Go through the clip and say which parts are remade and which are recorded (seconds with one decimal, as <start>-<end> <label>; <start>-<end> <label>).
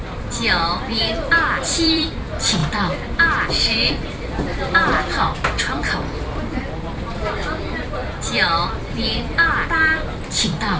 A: 0.0-10.8 remade